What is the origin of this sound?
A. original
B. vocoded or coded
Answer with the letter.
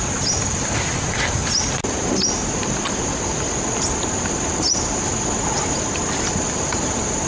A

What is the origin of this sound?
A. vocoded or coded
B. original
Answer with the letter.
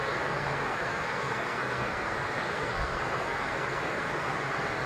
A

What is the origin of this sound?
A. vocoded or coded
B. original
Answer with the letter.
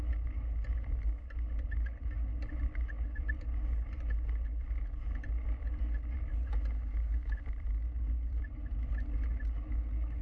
B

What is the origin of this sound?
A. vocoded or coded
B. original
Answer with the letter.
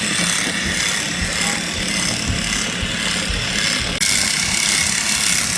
B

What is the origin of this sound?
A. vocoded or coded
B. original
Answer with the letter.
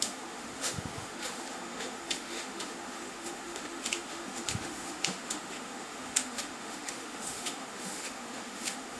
A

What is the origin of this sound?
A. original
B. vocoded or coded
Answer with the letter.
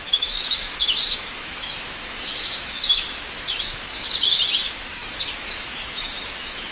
B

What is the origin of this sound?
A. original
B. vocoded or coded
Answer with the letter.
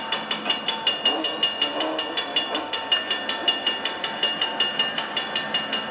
A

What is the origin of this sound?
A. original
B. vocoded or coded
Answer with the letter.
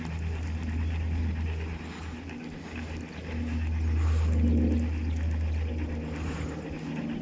A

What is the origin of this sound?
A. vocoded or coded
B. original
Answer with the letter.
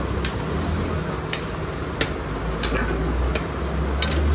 B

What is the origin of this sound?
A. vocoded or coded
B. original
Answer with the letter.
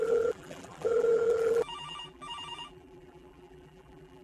A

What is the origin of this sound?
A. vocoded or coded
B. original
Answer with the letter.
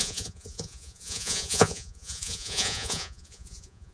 A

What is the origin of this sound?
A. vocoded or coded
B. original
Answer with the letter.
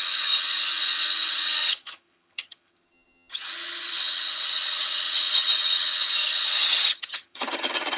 A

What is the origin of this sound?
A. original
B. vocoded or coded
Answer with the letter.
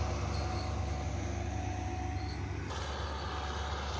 A